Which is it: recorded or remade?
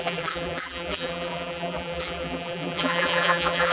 remade